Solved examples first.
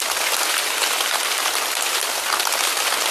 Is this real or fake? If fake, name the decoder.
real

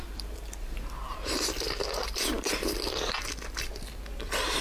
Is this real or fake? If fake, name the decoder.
fake, vocoder, BigVGAN v2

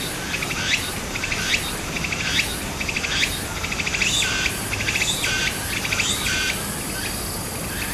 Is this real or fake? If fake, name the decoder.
real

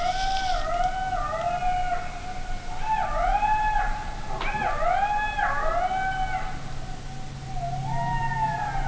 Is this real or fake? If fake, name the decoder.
real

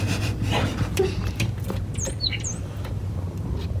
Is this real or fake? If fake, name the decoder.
fake, vocoder, BigVGAN v2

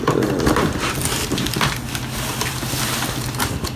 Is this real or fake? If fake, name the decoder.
real